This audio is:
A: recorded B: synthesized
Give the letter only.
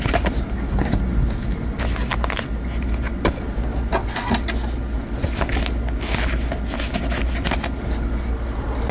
A